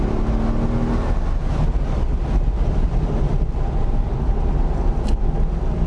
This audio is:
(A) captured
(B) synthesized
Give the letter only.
A